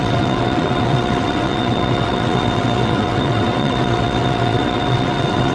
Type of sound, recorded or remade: remade